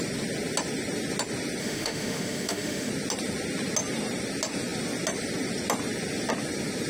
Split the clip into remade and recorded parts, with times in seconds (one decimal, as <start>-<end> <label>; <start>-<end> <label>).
0.0-1.6 recorded; 1.6-2.9 remade; 2.9-6.9 recorded

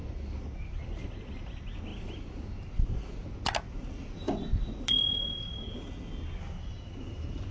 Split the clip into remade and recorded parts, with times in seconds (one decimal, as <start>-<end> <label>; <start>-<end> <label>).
0.0-7.5 recorded

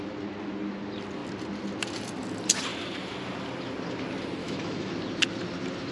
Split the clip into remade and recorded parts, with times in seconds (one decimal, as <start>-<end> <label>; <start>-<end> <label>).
0.0-4.4 recorded; 4.4-4.9 remade; 4.9-5.9 recorded

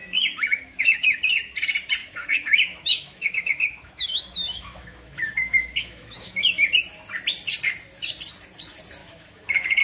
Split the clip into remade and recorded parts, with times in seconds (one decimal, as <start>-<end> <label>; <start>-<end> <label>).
0.0-1.2 remade; 1.2-2.0 recorded; 2.0-6.4 remade; 6.4-9.0 recorded; 9.0-9.8 remade

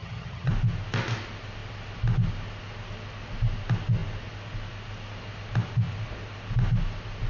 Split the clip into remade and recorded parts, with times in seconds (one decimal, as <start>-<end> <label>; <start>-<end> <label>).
0.0-0.5 remade; 0.5-7.3 recorded

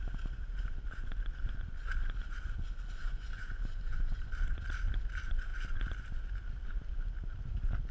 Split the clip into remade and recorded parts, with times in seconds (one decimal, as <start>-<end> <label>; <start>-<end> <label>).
0.0-3.0 recorded; 3.0-4.3 remade; 4.3-7.9 recorded

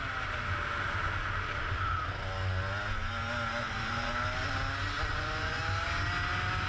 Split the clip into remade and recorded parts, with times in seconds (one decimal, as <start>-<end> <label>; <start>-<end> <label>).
0.0-3.6 recorded; 3.6-4.1 remade; 4.1-5.1 recorded; 5.1-5.6 remade; 5.6-6.7 recorded